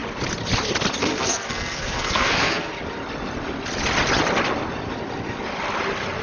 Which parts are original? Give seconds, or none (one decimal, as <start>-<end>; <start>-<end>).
0.0-1.0; 2.7-6.2